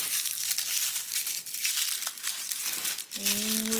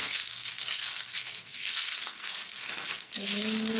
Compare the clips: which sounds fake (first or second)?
second